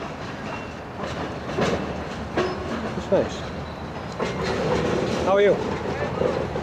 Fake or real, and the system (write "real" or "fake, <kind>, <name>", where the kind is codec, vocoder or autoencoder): real